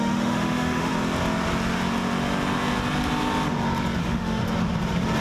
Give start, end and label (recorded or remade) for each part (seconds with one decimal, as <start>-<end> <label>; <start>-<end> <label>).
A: 0.0-0.9 remade; 0.9-4.0 recorded; 4.0-4.4 remade; 4.4-5.2 recorded